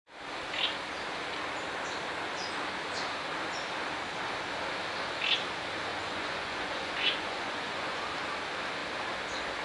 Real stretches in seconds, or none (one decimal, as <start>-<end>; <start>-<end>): 0.0-5.9; 8.0-9.6